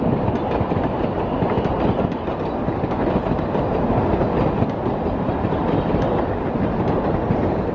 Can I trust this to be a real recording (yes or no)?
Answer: yes